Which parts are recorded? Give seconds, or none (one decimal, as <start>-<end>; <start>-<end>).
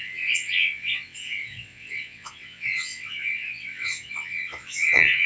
none